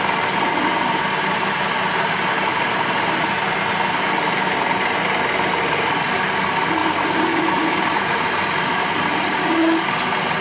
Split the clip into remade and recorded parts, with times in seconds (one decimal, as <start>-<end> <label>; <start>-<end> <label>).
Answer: 0.0-6.8 recorded; 6.8-9.4 remade; 9.4-10.4 recorded